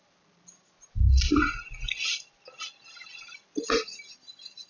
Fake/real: real